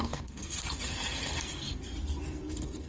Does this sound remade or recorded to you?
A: remade